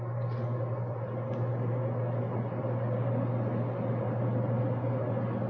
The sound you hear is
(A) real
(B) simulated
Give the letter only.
A